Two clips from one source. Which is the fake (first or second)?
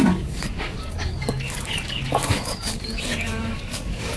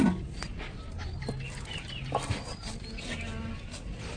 first